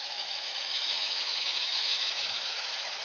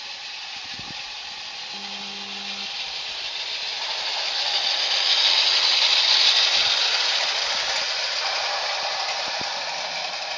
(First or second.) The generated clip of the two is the first